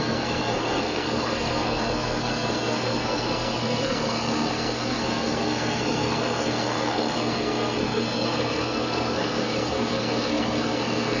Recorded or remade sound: remade